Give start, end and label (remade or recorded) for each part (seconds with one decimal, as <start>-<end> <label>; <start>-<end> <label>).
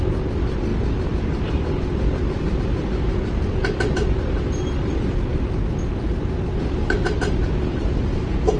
0.0-0.7 recorded; 0.7-2.6 remade; 2.6-8.6 recorded